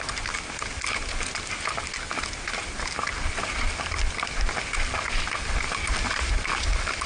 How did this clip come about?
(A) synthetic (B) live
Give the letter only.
B